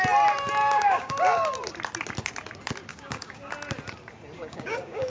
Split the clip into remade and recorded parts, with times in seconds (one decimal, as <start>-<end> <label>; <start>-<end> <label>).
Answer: 0.0-0.6 recorded; 0.6-1.1 remade; 1.1-2.9 recorded; 2.9-3.5 remade; 3.5-4.4 recorded; 4.4-5.1 remade